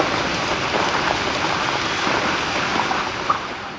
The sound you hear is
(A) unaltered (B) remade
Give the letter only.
A